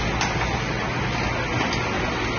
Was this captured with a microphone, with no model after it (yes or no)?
yes